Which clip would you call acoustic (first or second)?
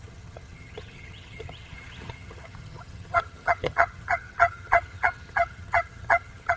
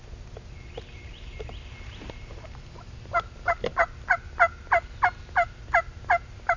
second